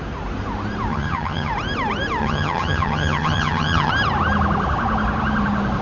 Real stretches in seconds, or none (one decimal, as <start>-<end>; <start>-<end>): 0.0-0.9; 1.5-2.2; 3.9-5.8